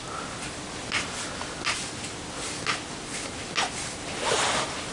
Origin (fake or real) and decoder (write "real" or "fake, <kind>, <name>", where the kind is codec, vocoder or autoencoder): real